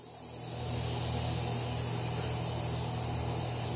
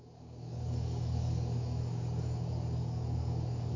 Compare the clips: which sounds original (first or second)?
first